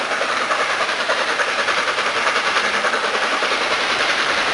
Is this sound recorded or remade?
remade